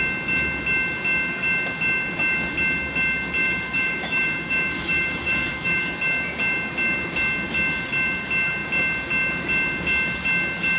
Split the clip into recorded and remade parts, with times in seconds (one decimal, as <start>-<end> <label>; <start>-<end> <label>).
0.0-3.4 recorded; 3.4-5.8 remade; 5.8-10.8 recorded